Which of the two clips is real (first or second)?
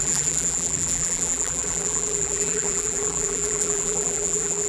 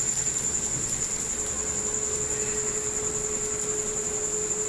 second